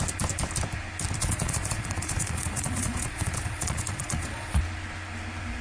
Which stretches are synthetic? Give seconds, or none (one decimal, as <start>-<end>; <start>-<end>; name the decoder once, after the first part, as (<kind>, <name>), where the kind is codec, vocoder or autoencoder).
1.2-4.6 (vocoder, Vocos)